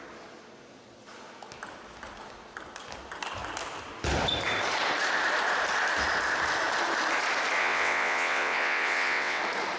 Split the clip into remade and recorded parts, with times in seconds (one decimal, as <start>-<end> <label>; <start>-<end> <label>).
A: 0.0-7.6 recorded; 7.6-9.4 remade; 9.4-9.8 recorded